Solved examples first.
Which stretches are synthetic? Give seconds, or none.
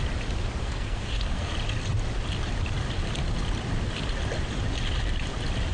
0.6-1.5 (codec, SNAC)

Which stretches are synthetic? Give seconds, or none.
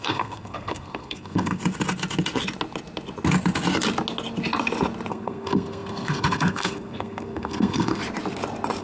0.0-1.6 (codec, SNAC); 5.1-8.0